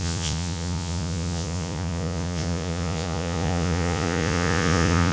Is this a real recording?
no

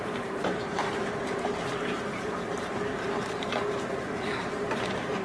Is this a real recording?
no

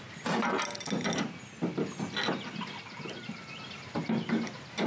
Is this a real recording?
yes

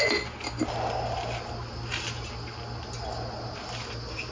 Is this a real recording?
yes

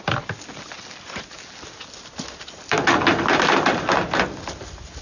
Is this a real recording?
yes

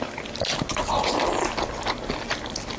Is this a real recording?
yes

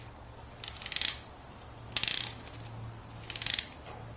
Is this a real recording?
yes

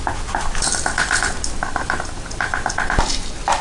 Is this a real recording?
yes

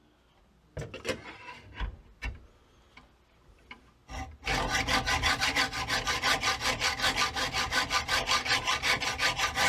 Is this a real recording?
yes